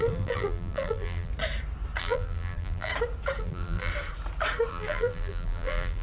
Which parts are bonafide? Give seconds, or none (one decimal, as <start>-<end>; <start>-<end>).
1.3-2.0; 2.9-3.4; 3.9-4.7